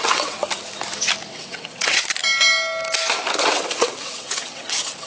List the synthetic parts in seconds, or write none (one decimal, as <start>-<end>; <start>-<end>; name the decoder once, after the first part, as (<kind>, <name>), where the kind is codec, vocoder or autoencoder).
0.0-0.4 (vocoder, WaveNeXt); 1.3-2.0; 3.4-5.1